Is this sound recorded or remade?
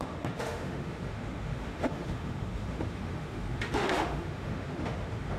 remade